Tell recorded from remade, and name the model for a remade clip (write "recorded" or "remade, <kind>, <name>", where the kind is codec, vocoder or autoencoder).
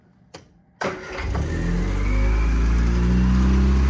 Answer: recorded